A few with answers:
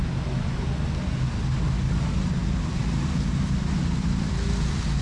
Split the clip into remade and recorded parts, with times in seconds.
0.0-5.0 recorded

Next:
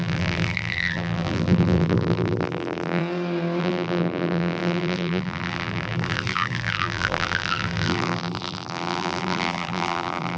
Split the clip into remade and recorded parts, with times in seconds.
0.0-3.0 remade; 3.0-3.6 recorded; 3.6-10.4 remade

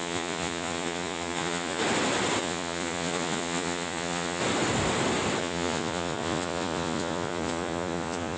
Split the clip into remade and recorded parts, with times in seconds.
0.0-1.8 remade; 1.8-2.4 recorded; 2.4-4.4 remade; 4.4-5.4 recorded; 5.4-8.4 remade

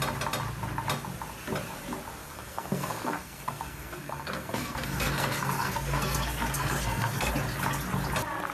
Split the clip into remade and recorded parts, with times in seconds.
0.0-2.2 recorded; 2.2-7.3 remade; 7.3-8.5 recorded

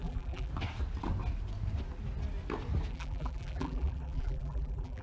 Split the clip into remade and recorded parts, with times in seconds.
0.0-0.5 remade; 0.5-2.9 recorded; 2.9-5.0 remade

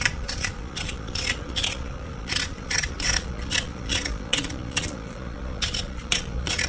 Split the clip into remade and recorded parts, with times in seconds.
0.0-6.7 remade

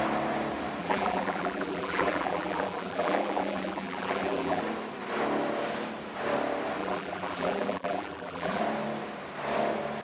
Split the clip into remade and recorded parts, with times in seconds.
0.0-0.8 recorded; 0.8-4.6 remade; 4.6-6.8 recorded; 6.8-8.6 remade; 8.6-10.0 recorded

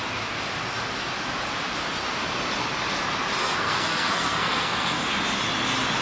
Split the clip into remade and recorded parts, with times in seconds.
0.0-3.4 recorded; 3.4-5.0 remade; 5.0-6.0 recorded